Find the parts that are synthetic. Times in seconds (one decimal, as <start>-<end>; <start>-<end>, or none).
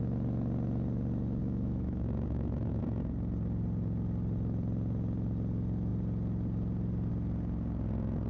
1.4-2.8